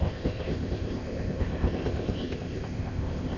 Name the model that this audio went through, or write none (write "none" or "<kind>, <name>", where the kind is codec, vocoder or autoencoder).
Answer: codec, ZipCodec